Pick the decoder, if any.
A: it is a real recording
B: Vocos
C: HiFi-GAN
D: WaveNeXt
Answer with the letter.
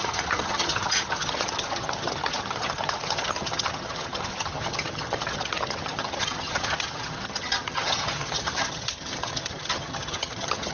C